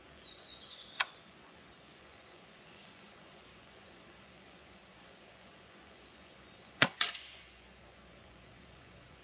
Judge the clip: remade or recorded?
remade